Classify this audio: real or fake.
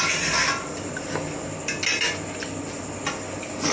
real